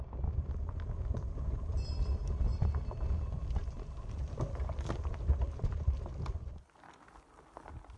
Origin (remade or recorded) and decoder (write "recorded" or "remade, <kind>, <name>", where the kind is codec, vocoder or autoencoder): recorded